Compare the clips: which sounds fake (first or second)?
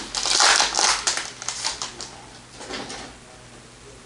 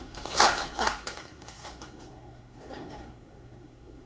second